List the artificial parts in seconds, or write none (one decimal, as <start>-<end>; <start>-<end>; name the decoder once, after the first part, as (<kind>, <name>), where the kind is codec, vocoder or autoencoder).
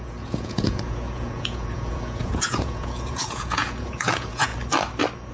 0.0-4.5 (vocoder, Vocos)